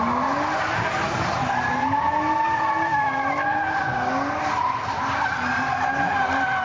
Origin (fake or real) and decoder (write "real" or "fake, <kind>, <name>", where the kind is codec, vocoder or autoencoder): real